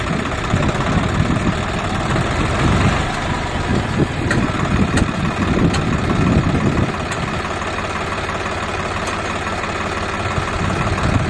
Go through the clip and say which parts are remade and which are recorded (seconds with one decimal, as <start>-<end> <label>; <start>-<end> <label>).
0.0-11.3 recorded